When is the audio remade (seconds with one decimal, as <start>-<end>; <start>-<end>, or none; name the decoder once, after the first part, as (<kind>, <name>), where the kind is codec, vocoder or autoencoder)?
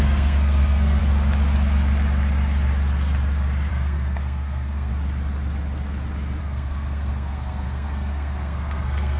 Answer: 0.0-1.0 (codec, SNAC); 3.7-4.9; 6.4-9.2